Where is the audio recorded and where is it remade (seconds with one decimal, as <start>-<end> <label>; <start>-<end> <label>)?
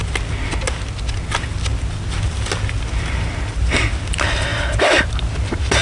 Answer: 0.0-5.8 recorded